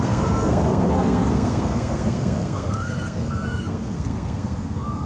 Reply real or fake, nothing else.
fake